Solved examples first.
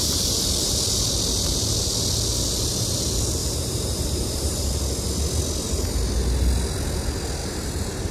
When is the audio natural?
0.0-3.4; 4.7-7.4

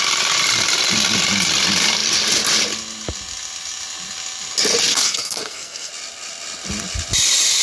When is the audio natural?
0.0-4.9; 5.9-7.6

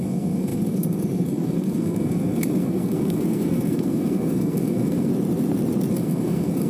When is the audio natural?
5.1-5.9

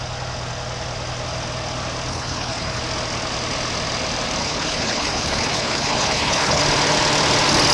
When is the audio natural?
0.0-2.1; 2.8-4.4; 6.6-7.7

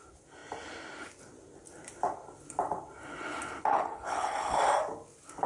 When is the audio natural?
0.0-3.7; 4.6-5.5